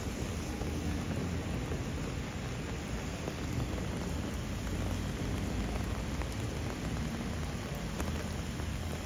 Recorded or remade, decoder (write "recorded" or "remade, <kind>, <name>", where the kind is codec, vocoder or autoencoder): recorded